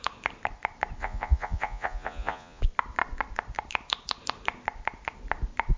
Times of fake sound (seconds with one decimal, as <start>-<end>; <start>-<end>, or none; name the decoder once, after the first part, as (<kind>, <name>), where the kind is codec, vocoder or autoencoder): 1.0-2.6 (vocoder, Vocos)